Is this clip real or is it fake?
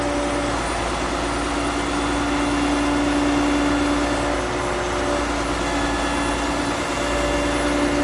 real